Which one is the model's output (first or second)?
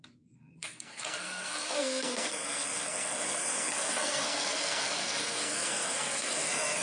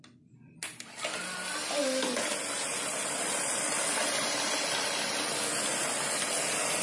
first